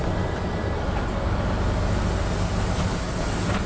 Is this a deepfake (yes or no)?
no